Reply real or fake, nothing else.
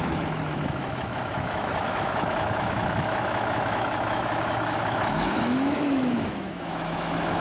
fake